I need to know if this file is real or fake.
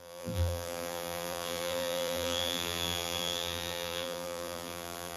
fake